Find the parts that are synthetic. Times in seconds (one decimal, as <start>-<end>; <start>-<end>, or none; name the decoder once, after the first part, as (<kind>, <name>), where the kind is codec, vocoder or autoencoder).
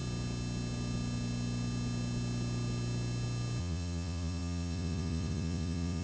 3.6-6.0 (vocoder, Vocos)